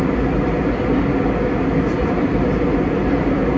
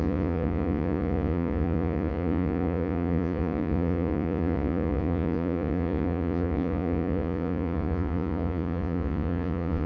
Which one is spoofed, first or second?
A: second